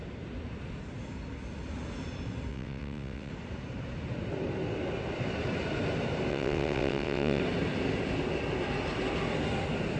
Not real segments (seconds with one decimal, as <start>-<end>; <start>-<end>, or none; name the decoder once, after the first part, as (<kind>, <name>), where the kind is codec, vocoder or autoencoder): 2.5-3.3 (vocoder, WaveNeXt); 6.3-7.4